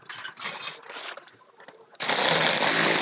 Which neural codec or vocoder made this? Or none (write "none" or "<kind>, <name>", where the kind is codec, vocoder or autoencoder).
none